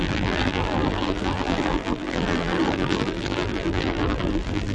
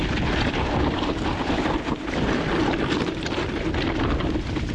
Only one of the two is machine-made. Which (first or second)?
first